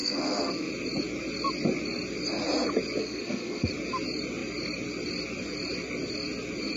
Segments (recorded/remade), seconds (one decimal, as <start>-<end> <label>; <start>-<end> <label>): 0.0-0.7 remade; 0.7-3.0 recorded; 3.0-3.7 remade; 3.7-6.8 recorded